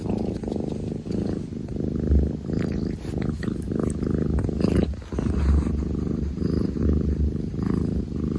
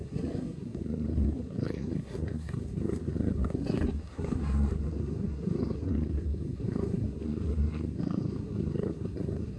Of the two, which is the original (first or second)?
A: first